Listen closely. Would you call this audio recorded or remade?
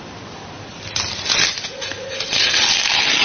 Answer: recorded